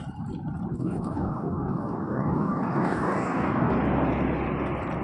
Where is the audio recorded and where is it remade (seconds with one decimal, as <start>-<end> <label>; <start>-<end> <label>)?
0.0-0.7 recorded; 0.7-3.7 remade; 3.7-5.0 recorded